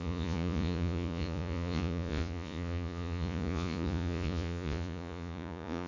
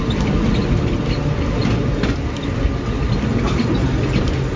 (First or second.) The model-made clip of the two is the first